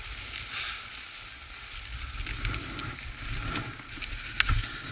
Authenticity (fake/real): real